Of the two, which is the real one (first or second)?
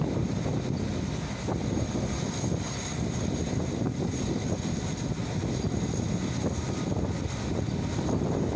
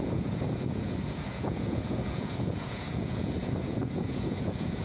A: first